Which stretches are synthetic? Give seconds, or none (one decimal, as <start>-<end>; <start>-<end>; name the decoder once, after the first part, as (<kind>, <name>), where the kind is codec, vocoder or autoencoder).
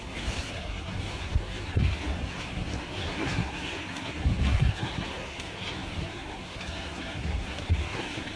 0.0-8.4 (codec, SNAC)